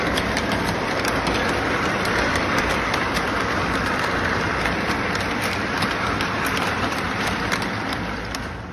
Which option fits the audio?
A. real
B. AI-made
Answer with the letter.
B